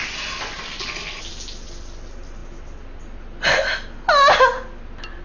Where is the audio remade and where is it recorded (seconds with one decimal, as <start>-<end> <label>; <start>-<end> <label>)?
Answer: 0.0-1.3 remade; 1.3-5.2 recorded